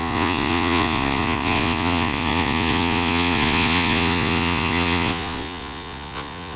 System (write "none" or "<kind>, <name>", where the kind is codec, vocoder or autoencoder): vocoder, Vocos